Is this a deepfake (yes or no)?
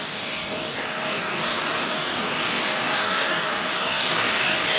yes